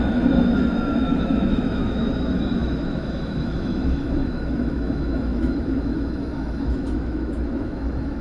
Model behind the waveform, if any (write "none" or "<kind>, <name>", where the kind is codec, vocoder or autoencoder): autoencoder, DAC-VAE